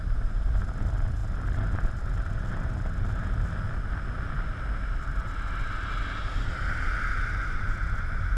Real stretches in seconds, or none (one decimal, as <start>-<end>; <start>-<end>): 0.0-8.4